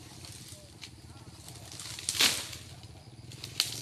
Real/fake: real